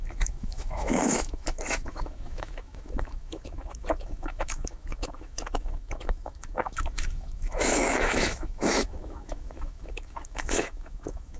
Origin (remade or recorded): remade